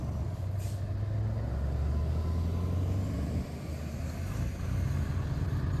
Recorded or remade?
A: recorded